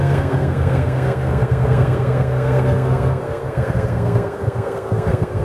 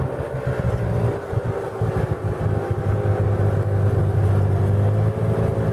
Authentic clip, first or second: second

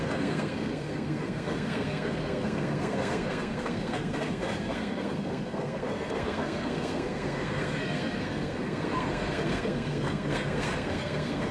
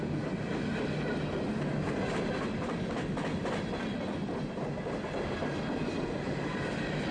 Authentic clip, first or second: second